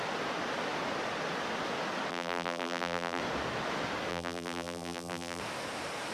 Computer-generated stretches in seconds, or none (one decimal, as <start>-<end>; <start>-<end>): 2.1-3.2; 4.1-5.4